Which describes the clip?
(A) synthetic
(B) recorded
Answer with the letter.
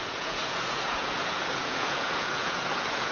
A